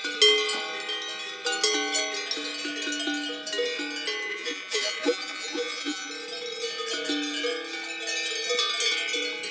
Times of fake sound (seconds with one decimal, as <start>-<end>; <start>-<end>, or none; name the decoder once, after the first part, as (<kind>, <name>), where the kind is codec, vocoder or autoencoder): 4.3-6.1 (vocoder, Vocos)